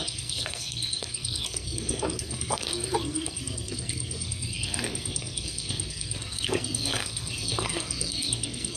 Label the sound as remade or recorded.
remade